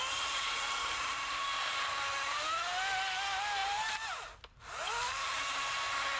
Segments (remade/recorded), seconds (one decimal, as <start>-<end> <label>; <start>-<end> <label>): 0.0-6.2 recorded